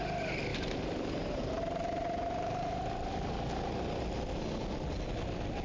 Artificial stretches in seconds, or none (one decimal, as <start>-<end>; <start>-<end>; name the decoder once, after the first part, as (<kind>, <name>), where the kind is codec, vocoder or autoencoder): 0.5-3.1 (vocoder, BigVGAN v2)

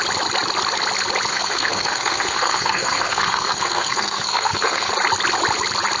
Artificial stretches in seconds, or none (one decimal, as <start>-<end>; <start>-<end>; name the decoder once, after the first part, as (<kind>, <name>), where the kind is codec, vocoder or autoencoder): 1.3-4.9 (codec, SNAC)

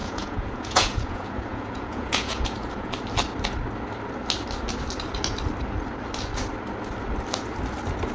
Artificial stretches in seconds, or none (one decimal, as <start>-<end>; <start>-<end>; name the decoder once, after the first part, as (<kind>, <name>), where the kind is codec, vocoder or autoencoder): 0.0-2.9 (vocoder, Vocos)

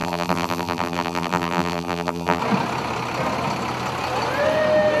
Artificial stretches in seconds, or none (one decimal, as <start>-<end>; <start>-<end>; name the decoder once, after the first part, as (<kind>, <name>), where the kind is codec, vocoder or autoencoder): 0.0-2.4 (vocoder, BigVGAN v2)

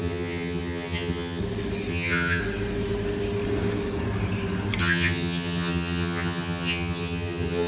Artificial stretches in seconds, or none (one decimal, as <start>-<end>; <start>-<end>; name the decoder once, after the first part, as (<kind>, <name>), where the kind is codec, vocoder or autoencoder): 0.0-1.4 (vocoder, HiFi-GAN); 1.9-2.4; 4.8-7.7

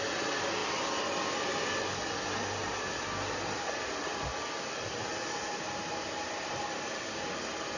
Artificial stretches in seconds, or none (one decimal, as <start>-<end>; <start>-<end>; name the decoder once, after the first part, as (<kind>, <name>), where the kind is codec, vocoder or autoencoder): none

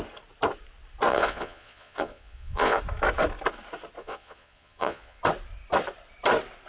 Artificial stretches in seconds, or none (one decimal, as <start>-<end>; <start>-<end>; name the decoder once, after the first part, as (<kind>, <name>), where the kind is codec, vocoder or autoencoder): 1.1-2.8 (vocoder, Vocos); 4.0-5.2